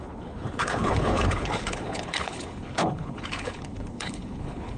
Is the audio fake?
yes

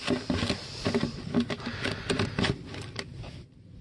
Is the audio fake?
no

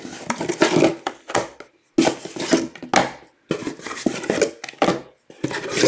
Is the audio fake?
no